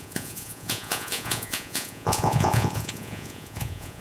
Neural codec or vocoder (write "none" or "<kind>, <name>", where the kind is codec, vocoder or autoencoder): vocoder, Vocos